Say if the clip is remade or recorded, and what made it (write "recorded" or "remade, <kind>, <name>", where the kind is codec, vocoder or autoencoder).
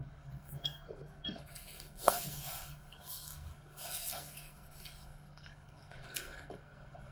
remade, codec, SNAC